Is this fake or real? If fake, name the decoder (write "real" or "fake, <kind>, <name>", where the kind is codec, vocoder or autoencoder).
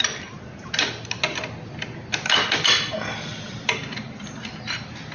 real